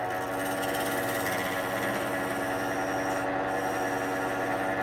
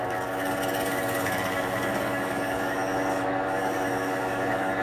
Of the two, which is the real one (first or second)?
first